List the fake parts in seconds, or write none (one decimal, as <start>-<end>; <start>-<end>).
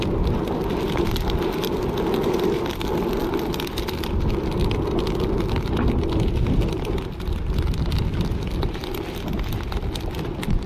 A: none